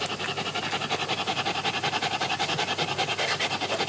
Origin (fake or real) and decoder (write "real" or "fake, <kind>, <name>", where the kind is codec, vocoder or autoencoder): real